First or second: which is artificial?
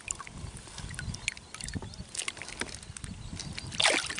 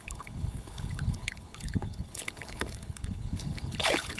second